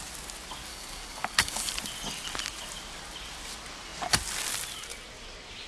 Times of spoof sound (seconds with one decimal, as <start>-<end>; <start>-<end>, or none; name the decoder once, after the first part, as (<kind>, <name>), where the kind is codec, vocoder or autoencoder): 0.7-1.7 (codec, DAC)